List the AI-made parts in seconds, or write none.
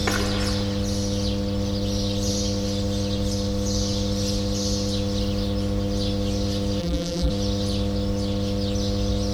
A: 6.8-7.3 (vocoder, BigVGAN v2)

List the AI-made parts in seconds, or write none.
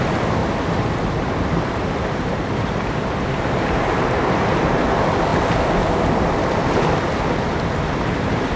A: 0.4-4.8 (vocoder, BigVGAN v2)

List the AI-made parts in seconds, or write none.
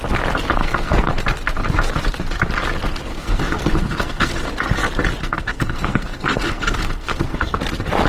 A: 0.6-1.1 (codec, SNAC); 3.1-4.3; 5.2-7.6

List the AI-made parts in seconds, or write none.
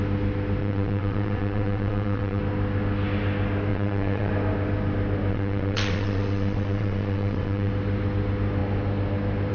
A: 0.6-2.4 (vocoder, WaveNeXt); 3.7-4.3; 5.3-7.7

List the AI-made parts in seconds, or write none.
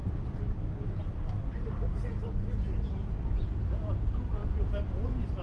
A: none